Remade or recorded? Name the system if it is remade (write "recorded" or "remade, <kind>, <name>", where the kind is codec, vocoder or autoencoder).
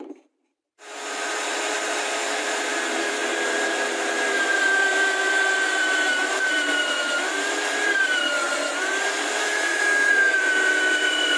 remade, vocoder, BigVGAN v2